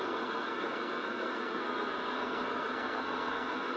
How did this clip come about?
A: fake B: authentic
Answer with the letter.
A